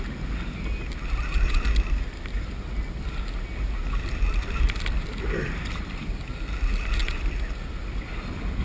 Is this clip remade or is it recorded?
recorded